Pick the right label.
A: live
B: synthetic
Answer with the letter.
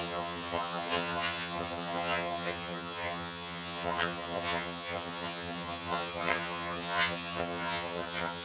B